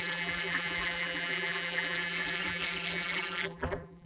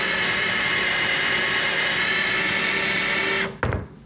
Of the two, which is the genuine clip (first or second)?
second